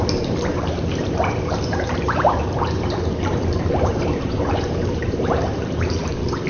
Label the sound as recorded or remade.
remade